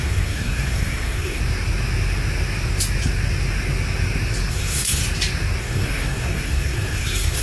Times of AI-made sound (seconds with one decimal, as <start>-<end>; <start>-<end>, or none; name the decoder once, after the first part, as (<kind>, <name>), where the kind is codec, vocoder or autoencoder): 0.0-1.4 (codec, SNAC); 4.5-5.0; 5.6-7.4